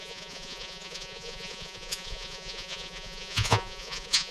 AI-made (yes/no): yes